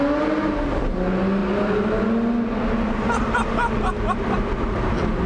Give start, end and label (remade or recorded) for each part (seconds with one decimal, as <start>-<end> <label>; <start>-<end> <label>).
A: 0.0-5.3 recorded